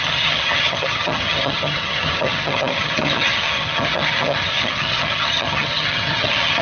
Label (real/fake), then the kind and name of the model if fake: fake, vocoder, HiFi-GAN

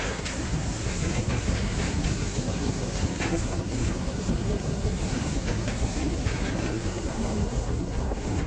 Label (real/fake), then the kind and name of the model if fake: fake, codec, SNAC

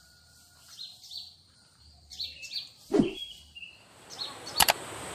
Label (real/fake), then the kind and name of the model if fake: fake, vocoder, BigVGAN v2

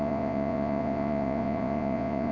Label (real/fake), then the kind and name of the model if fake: fake, vocoder, Vocos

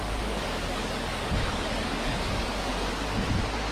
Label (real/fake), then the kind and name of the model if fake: fake, codec, DAC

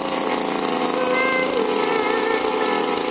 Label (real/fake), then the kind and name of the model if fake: real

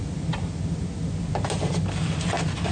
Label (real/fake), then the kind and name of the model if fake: real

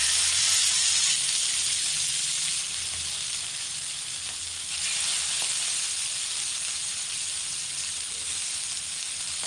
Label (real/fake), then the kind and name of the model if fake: real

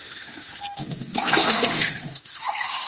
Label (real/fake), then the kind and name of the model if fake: fake, autoencoder, DAC-VAE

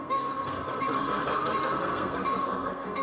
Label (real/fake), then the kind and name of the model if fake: fake, codec, SNAC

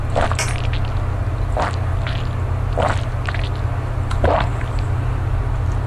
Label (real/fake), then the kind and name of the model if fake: real